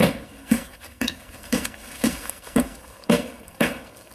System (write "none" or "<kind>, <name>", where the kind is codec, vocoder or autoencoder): codec, SNAC